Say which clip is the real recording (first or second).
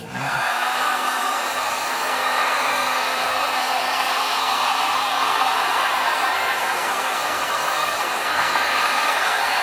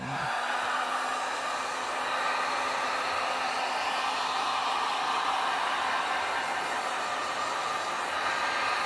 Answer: second